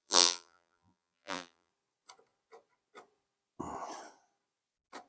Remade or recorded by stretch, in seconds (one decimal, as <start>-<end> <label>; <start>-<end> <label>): 0.0-1.7 remade; 1.7-5.1 recorded